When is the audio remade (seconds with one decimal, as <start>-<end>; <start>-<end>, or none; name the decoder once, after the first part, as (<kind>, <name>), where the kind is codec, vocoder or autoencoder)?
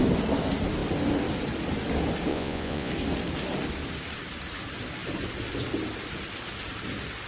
2.3-2.9 (vocoder, Vocos)